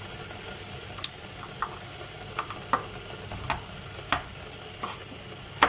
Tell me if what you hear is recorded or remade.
recorded